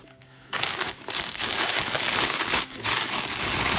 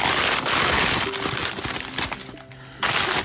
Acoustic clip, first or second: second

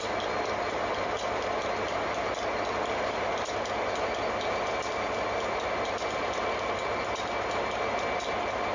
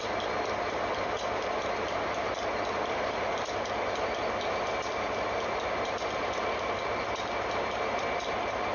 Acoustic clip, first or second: first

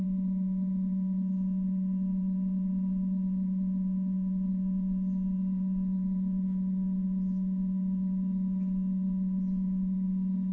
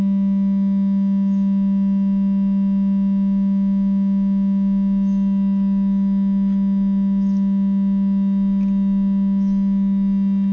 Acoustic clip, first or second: second